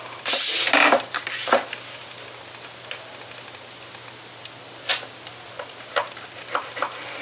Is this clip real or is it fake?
real